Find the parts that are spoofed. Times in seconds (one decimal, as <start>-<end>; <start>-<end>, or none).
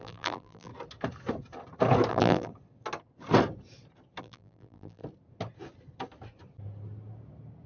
0.0-0.7; 2.1-2.5; 4.2-5.0